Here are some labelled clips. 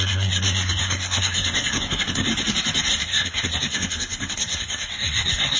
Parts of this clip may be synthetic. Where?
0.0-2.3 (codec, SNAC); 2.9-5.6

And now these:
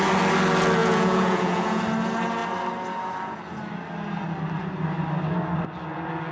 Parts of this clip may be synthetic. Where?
0.8-1.8 (vocoder, Vocos)

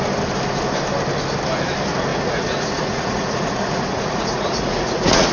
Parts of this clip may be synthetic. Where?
2.1-5.3 (vocoder, Vocos)

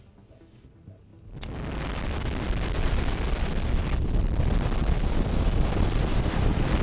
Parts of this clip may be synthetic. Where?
none

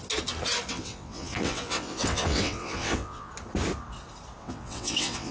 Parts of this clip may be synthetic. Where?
0.7-3.3 (vocoder, WaveNeXt); 4.4-5.3